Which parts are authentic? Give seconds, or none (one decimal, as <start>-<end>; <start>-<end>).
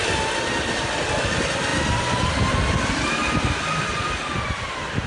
0.0-5.1